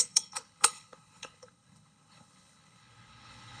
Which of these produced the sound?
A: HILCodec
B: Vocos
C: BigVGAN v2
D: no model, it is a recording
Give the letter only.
A